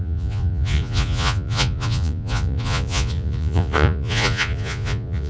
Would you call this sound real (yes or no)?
no